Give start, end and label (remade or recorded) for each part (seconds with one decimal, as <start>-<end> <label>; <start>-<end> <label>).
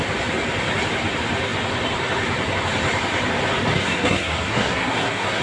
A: 0.0-3.8 recorded; 3.8-5.4 remade